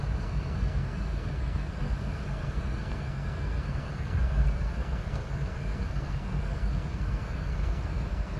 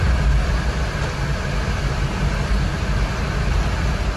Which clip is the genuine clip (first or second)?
second